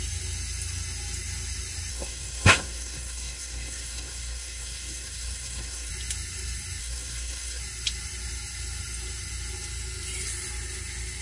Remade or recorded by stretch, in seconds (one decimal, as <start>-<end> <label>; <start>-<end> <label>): 0.0-1.9 recorded; 1.9-5.9 remade; 5.9-6.8 recorded; 6.8-7.6 remade; 7.6-11.2 recorded